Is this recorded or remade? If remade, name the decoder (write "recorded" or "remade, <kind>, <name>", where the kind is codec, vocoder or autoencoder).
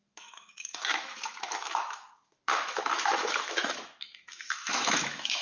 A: remade, autoencoder, DAC-VAE